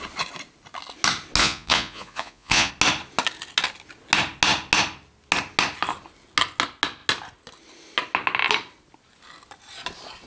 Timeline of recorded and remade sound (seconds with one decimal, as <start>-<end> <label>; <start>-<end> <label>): 0.0-1.4 recorded; 1.4-2.7 remade; 2.7-10.3 recorded